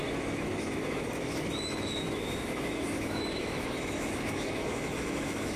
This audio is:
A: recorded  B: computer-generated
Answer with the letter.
B